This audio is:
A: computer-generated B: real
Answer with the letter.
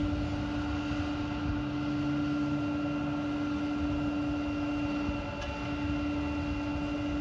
B